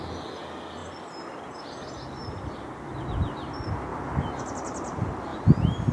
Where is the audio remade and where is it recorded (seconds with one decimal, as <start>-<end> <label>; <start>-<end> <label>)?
0.0-3.9 recorded; 3.9-4.4 remade; 4.4-5.3 recorded; 5.3-5.9 remade